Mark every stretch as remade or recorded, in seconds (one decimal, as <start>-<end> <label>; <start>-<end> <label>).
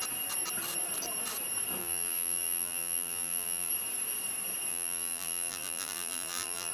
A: 0.0-1.8 recorded; 1.8-3.7 remade; 3.7-4.7 recorded; 4.7-6.7 remade